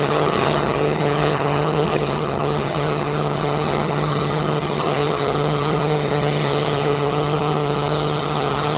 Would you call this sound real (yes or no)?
no